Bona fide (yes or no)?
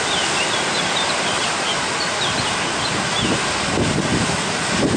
yes